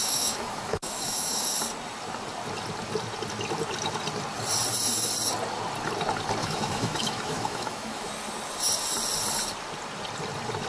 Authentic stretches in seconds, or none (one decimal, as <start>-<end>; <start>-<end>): 1.6-6.4; 8.1-10.7